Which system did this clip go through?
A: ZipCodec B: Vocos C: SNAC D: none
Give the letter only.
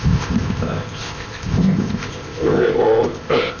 A